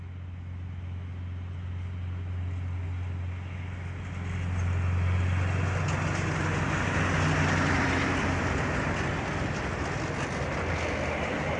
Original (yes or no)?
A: yes